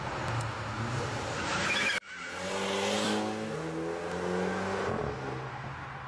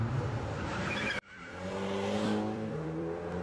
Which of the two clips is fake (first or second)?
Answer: second